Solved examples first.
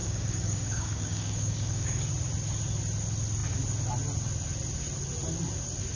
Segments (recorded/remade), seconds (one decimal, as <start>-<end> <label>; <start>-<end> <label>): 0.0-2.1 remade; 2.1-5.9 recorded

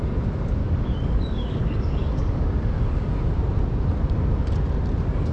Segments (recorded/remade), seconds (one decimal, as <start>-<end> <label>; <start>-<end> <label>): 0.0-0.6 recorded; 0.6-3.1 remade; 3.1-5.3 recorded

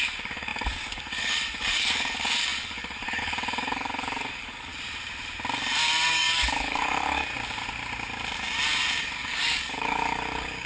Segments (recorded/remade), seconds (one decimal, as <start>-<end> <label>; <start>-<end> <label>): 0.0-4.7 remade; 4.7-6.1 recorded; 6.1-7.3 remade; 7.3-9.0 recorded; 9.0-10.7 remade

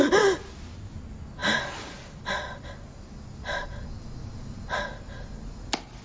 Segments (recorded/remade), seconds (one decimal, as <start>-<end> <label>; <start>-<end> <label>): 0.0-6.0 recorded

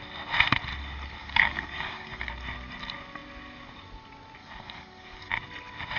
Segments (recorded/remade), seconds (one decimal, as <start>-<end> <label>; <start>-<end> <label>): 0.0-1.2 recorded; 1.2-2.3 remade; 2.3-4.4 recorded; 4.4-5.3 remade; 5.3-6.0 recorded

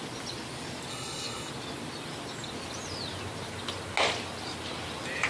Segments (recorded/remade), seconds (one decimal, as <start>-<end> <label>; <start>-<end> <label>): 0.0-0.9 recorded; 0.9-1.5 remade; 1.5-5.3 recorded

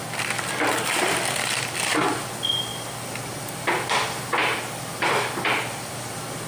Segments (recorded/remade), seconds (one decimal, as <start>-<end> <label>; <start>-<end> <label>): 0.0-6.5 recorded